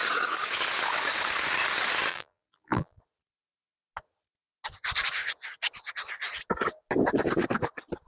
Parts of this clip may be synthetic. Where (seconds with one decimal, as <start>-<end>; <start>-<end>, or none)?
2.1-3.0